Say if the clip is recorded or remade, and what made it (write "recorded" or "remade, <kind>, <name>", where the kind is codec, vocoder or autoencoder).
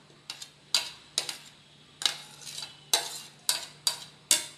recorded